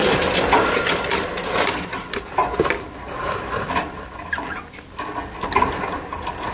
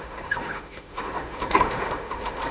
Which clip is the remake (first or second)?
second